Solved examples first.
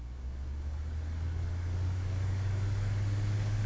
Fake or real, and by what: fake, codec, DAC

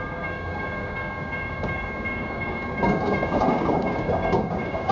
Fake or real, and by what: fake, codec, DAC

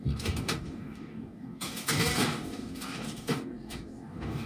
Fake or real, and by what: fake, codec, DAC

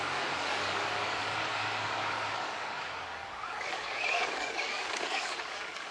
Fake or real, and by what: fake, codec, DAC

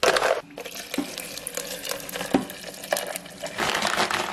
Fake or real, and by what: real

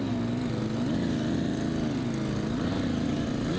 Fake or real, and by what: real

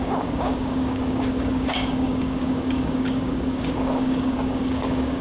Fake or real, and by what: fake, codec, DAC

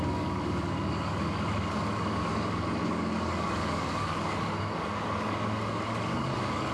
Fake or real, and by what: fake, codec, DAC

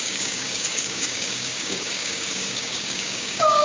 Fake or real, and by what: fake, codec, DAC